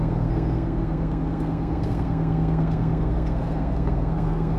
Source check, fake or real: fake